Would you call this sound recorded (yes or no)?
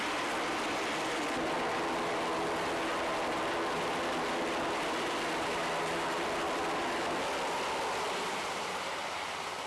yes